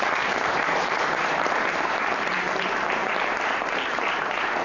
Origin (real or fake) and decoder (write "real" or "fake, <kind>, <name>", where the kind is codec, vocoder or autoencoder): fake, vocoder, BigVGAN v2